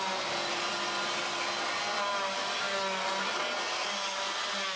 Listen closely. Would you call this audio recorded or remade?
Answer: recorded